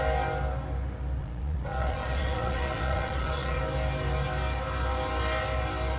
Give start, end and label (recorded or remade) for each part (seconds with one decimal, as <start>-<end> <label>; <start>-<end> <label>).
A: 0.0-1.2 recorded; 1.2-3.6 remade; 3.6-6.0 recorded